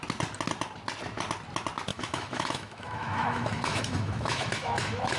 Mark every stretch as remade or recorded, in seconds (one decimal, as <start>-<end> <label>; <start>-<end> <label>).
0.0-1.9 recorded; 1.9-5.2 remade